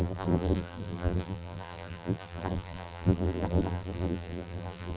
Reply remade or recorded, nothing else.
remade